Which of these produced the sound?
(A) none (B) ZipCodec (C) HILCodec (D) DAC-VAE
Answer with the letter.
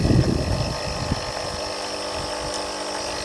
A